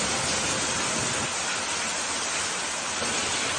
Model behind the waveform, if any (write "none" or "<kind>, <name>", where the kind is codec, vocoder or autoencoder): none